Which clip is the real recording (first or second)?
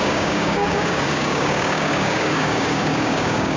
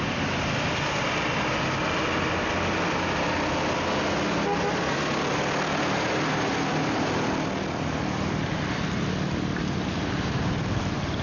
second